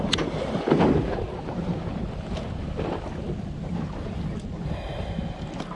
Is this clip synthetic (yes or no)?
no